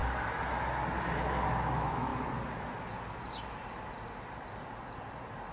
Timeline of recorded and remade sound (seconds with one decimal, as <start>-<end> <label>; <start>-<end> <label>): 0.0-1.2 recorded; 1.2-2.1 remade; 2.1-5.5 recorded